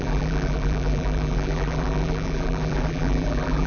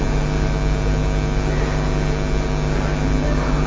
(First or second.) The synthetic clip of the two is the first